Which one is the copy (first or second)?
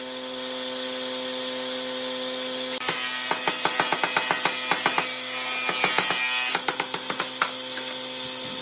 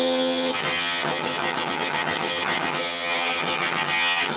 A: second